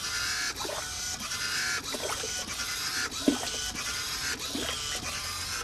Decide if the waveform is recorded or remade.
recorded